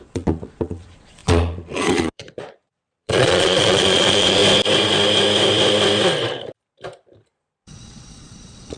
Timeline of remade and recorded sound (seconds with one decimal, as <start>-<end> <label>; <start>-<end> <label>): 0.0-4.4 remade; 4.4-7.6 recorded; 7.6-8.8 remade